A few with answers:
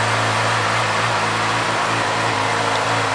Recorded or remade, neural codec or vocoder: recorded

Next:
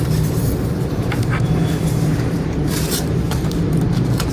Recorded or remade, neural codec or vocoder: remade, vocoder, BigVGAN v2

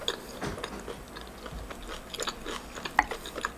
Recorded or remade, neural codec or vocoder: recorded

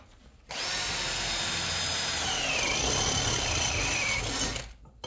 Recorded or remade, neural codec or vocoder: recorded